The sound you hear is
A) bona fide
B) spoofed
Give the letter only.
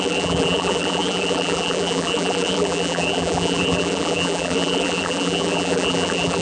B